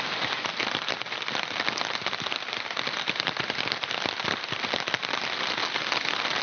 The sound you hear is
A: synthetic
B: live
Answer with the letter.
B